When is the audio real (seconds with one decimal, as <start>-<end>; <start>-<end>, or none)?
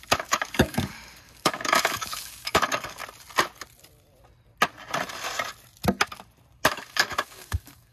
3.0-6.7